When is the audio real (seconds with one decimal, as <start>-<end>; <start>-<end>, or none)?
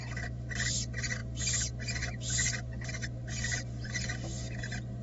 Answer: 0.0-5.0